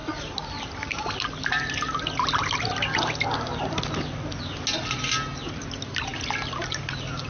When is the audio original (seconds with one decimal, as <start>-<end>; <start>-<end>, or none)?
0.0-7.3